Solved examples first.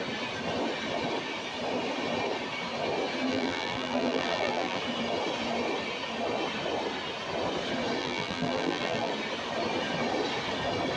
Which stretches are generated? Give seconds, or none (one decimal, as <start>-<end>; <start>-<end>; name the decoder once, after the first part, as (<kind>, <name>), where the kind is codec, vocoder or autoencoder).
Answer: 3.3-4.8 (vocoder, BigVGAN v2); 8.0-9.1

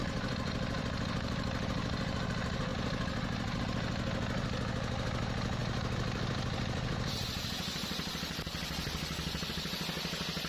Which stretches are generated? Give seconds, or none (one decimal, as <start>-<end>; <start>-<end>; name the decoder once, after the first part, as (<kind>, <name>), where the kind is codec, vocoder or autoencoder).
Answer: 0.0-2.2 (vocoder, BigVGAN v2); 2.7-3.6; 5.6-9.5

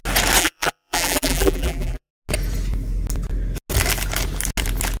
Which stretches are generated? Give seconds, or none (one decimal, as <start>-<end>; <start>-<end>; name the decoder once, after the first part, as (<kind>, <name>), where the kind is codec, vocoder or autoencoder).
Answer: 0.4-2.1 (vocoder, BigVGAN v2)

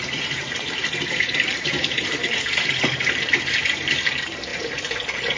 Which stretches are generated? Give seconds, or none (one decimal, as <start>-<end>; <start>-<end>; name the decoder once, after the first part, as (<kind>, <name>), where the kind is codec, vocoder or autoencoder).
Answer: 0.0-5.4 (vocoder, BigVGAN v2)